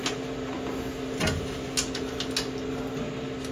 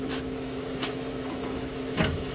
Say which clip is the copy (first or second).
second